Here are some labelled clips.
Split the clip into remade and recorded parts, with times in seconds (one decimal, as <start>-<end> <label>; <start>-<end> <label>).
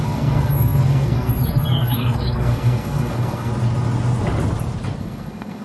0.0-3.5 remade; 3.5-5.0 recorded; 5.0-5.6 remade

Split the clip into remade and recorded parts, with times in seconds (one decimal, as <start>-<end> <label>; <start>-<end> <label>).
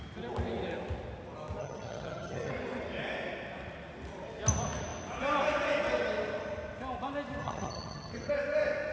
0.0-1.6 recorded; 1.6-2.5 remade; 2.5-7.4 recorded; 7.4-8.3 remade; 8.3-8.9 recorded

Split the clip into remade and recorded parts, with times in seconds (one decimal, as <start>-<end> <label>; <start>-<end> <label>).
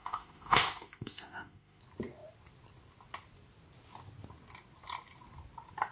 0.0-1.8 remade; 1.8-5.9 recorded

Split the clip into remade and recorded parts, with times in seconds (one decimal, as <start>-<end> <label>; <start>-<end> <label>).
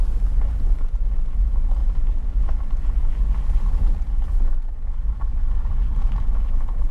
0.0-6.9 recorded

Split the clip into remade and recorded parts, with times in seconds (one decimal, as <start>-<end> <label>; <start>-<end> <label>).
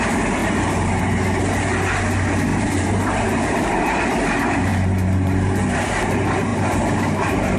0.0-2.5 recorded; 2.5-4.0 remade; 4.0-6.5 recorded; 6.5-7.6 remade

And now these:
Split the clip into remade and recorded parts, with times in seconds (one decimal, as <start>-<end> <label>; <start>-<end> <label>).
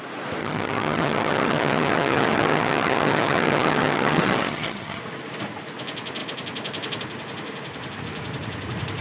0.0-0.4 recorded; 0.4-5.0 remade; 5.0-9.0 recorded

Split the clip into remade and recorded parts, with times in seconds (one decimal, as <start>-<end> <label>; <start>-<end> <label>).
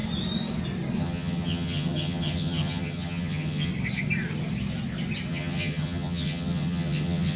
0.0-1.0 recorded; 1.0-3.7 remade; 3.7-5.3 recorded; 5.3-7.4 remade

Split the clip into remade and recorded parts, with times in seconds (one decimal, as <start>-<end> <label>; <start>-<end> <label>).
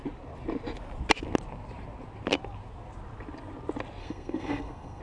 0.0-4.0 recorded; 4.0-5.0 remade